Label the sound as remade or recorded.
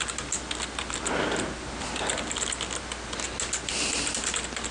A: recorded